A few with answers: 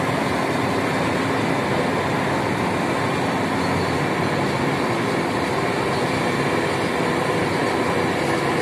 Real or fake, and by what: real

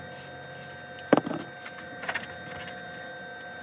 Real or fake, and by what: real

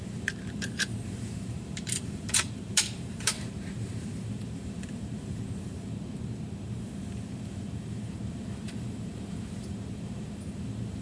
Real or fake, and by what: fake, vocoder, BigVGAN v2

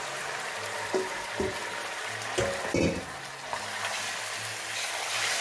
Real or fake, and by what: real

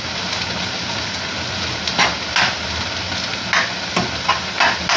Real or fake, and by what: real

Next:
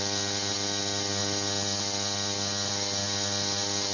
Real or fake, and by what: real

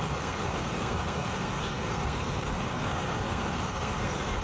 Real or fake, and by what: fake, codec, SNAC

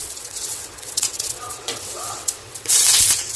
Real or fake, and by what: fake, vocoder, WaveNeXt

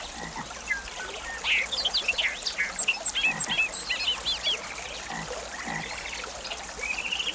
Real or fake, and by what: real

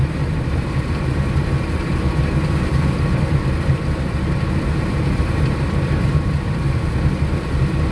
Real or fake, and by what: fake, vocoder, BigVGAN v2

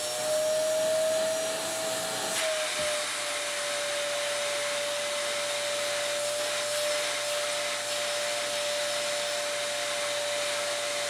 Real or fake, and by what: real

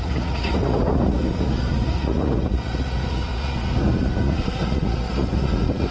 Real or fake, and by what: fake, vocoder, Vocos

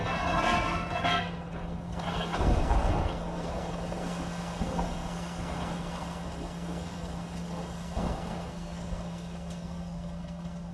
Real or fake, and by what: fake, codec, SNAC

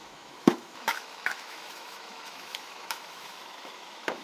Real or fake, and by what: fake, autoencoder, DAC-VAE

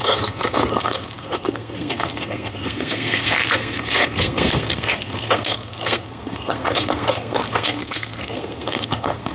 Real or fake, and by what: fake, codec, SNAC